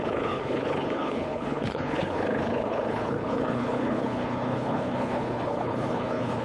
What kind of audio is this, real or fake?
fake